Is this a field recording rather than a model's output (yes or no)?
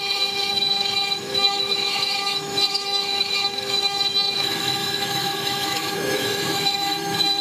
no